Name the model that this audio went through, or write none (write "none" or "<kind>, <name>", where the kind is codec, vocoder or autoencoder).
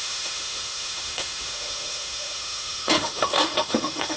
autoencoder, DAC-VAE